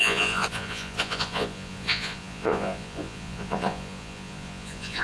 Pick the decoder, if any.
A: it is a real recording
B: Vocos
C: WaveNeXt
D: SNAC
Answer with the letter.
B